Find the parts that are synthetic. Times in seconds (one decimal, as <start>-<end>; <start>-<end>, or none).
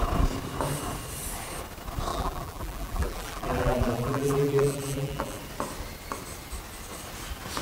2.1-5.4